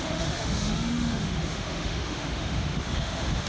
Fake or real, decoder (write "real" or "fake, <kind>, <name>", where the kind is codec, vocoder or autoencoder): fake, autoencoder, DAC-VAE